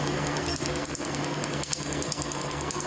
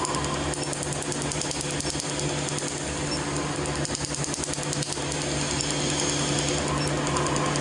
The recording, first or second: second